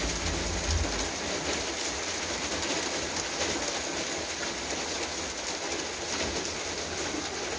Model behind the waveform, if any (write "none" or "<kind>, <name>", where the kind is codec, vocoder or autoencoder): none